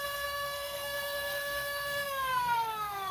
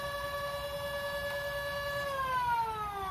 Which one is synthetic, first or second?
first